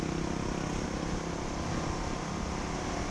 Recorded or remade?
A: recorded